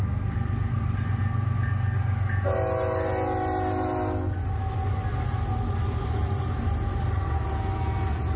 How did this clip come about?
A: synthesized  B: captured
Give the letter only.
B